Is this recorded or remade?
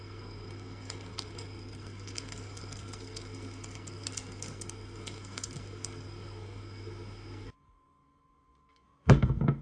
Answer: remade